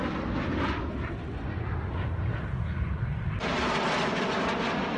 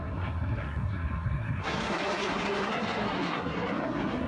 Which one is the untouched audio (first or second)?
first